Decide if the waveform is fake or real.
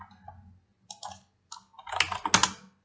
real